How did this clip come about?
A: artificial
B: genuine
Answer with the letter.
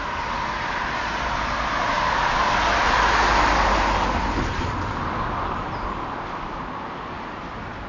B